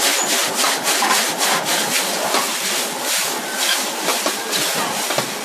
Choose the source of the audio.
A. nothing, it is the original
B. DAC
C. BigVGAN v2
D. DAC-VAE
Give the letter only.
A